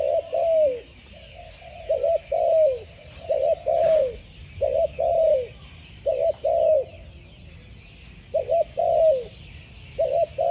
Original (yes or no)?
yes